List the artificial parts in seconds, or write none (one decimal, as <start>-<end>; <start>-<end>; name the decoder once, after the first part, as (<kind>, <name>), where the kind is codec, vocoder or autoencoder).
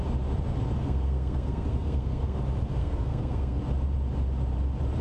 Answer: 0.8-2.4 (codec, SNAC); 2.8-3.6